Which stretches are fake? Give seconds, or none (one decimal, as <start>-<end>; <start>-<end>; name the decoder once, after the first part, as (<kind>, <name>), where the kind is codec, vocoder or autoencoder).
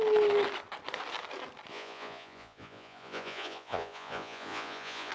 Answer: 1.7-5.1 (vocoder, Vocos)